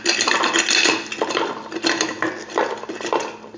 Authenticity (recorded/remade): recorded